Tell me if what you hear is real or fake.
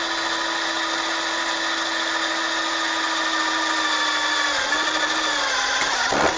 real